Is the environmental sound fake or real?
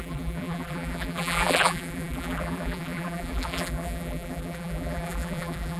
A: fake